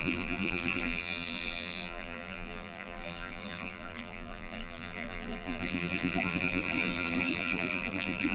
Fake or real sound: fake